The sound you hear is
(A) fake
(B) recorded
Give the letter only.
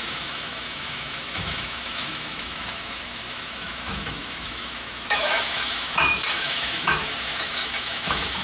A